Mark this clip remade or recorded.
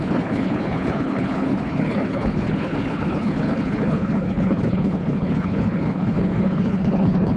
remade